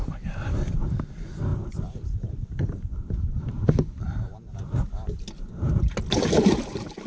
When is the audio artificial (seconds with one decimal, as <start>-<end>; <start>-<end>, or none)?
none